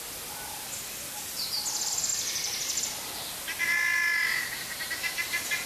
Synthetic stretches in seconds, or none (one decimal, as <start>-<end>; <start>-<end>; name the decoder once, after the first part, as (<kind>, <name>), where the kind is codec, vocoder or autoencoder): none